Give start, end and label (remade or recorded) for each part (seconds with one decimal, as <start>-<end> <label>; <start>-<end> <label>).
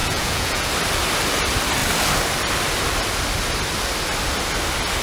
0.0-0.7 remade; 0.7-5.0 recorded